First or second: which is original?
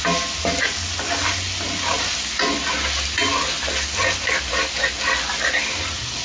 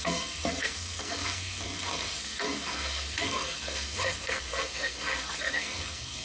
first